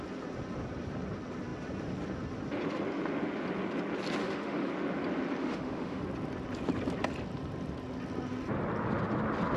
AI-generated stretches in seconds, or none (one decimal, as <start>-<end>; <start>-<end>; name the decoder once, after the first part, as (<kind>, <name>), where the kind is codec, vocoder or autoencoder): 4.2-4.7 (autoencoder, DAC-VAE); 5.4-6.0